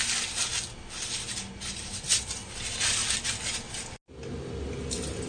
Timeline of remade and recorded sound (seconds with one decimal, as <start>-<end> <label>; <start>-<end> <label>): 0.0-5.3 recorded